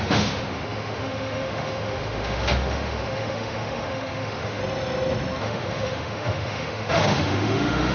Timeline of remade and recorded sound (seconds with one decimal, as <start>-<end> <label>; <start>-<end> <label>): 0.0-4.6 remade; 4.6-5.4 recorded; 5.4-7.9 remade